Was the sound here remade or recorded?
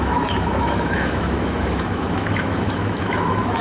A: remade